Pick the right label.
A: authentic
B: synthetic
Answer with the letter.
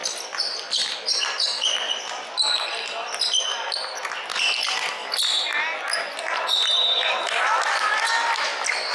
A